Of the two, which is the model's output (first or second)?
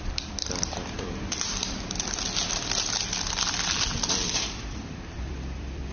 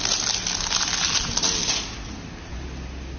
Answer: first